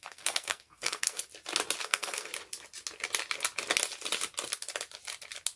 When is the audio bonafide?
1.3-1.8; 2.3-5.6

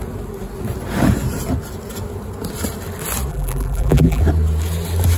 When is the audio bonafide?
0.0-3.3; 4.2-5.2

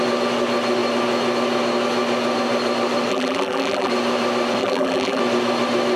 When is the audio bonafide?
0.0-3.1; 3.9-4.6; 5.2-6.0

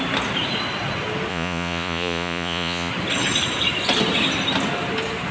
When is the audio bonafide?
0.0-1.3; 2.9-5.3

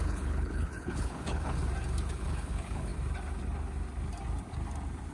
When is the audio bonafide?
1.6-2.1; 2.9-5.1

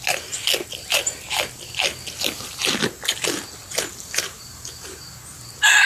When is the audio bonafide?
0.0-3.6; 4.7-5.9